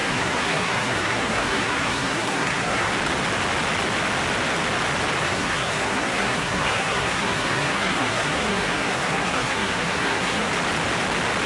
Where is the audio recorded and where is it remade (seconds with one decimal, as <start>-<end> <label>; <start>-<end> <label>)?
0.0-2.9 remade; 2.9-5.2 recorded; 5.2-10.5 remade; 10.5-11.5 recorded